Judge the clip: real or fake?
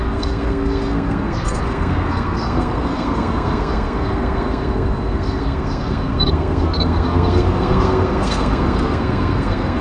fake